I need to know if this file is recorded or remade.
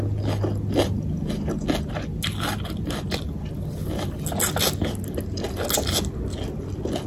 recorded